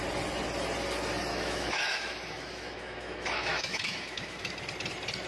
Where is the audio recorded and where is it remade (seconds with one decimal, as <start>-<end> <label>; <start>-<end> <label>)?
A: 0.0-1.3 recorded; 1.3-4.5 remade; 4.5-5.3 recorded